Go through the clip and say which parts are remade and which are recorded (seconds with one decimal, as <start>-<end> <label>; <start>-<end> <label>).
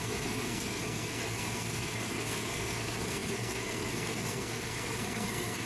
0.0-5.7 remade